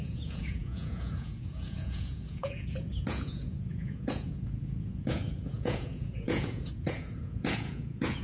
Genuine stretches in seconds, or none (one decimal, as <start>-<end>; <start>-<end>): none